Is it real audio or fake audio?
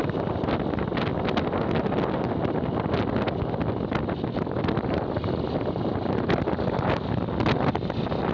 real